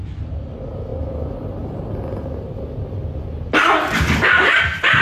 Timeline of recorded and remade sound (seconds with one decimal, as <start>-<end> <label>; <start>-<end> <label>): 0.0-5.0 recorded